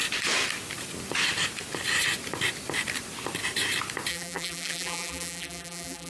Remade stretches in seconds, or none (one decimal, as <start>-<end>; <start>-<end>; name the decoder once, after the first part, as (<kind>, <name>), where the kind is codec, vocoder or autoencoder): 4.1-6.1 (vocoder, BigVGAN v2)